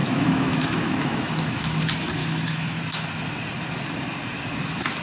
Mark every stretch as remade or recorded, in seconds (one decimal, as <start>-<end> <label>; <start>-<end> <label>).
0.0-1.8 remade; 1.8-2.2 recorded; 2.2-2.8 remade; 2.8-5.0 recorded